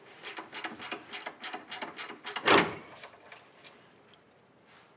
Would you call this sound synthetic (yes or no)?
no